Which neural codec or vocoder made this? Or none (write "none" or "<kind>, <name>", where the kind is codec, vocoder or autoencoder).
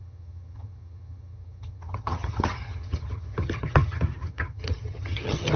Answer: vocoder, HiFi-GAN